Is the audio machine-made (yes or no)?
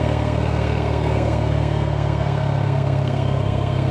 yes